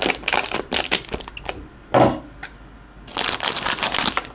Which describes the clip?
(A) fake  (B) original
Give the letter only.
B